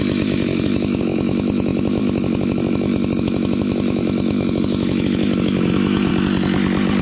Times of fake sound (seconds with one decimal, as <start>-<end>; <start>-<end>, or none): 0.0-6.1

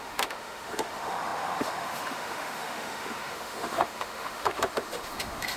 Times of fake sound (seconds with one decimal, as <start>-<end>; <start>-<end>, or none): 0.0-5.6

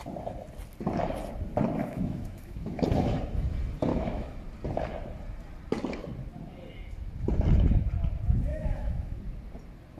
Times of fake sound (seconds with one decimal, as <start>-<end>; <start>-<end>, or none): 1.8-2.8; 3.9-4.4; 8.5-9.2

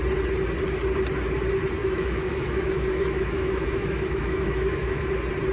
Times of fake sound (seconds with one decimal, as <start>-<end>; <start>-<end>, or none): 1.8-5.1

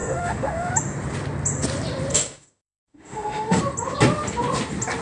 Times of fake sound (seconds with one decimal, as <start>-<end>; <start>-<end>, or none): 0.0-0.7; 2.1-3.6

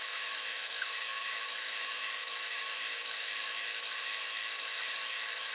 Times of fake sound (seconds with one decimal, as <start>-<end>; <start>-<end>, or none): 0.0-5.5

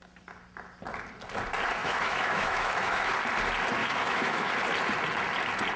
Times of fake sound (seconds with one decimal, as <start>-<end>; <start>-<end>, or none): 1.8-3.1; 3.8-4.5

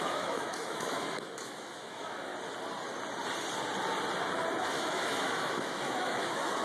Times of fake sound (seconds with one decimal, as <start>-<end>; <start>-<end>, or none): 0.0-2.3; 4.6-6.6